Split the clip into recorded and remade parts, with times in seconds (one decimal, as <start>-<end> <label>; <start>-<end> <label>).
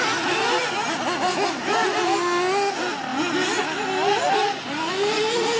0.0-5.6 recorded